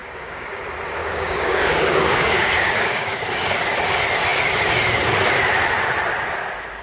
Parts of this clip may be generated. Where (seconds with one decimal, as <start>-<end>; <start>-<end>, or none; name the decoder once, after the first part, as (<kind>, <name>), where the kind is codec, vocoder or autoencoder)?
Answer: 0.0-0.6 (codec, DAC); 1.0-3.2